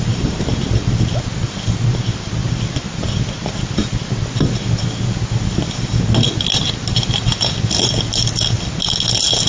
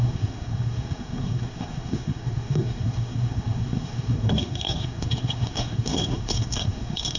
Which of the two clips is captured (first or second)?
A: first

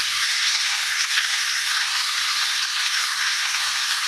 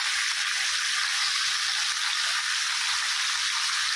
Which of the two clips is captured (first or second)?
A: second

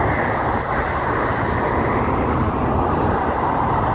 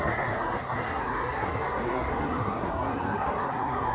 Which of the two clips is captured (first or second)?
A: first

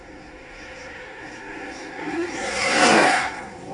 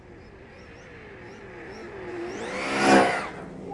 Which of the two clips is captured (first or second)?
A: second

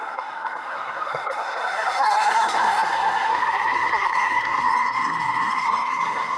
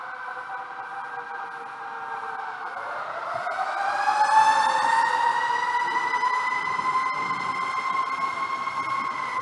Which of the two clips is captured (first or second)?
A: second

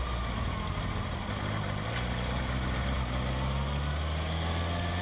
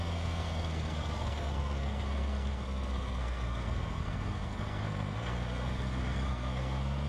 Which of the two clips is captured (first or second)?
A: first